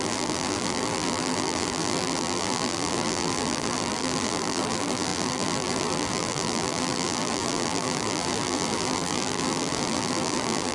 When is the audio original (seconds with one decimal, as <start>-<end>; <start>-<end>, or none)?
none

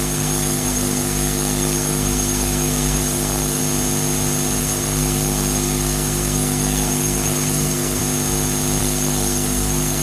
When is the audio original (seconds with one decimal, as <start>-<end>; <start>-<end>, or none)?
3.6-4.6; 8.0-8.8